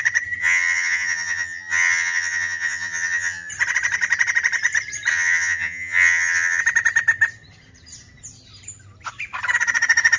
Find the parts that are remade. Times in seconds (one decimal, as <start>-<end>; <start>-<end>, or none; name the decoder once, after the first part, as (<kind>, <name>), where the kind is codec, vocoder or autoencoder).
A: 0.4-3.5 (vocoder, HiFi-GAN); 5.1-6.6

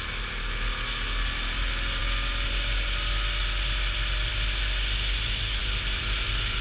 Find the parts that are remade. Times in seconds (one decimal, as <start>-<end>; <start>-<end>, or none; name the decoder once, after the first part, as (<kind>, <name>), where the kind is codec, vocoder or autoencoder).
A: none